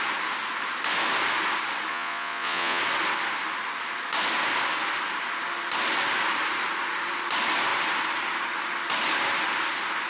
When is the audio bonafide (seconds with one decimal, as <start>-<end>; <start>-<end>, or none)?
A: 0.0-1.9; 2.8-10.1